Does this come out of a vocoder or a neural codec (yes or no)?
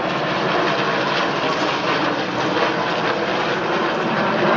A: no